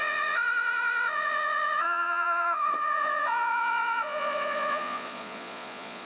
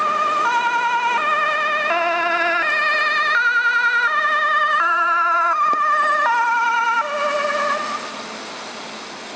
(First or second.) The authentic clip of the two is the second